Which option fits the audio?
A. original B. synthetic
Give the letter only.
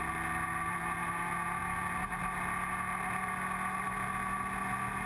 A